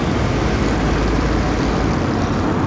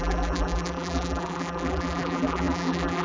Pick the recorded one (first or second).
first